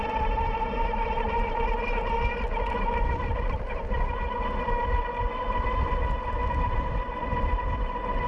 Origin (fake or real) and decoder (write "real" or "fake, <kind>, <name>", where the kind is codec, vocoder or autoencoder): real